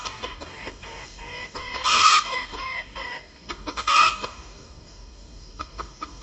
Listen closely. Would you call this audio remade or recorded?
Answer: remade